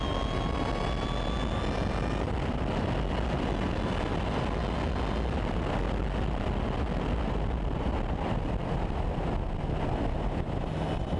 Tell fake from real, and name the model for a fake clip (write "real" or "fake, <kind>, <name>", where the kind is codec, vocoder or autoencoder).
real